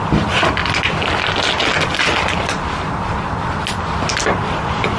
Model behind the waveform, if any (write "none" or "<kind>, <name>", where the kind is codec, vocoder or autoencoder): none